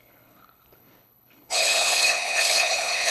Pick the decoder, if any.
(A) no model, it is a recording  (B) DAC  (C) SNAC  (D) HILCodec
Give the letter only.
D